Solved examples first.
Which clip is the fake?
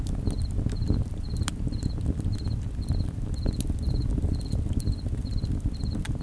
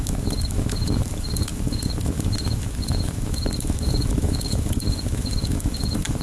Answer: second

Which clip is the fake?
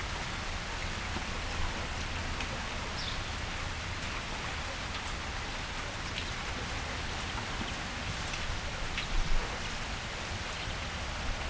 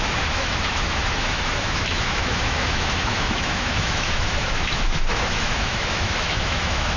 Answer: second